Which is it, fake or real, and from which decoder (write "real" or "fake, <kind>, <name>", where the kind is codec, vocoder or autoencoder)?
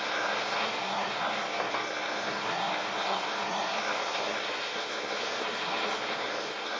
fake, codec, SNAC